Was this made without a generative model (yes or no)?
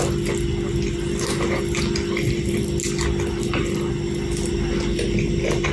yes